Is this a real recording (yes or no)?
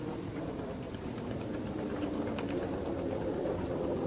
no